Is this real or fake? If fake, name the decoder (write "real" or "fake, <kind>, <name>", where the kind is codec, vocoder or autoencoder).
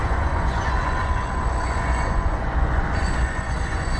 fake, vocoder, Vocos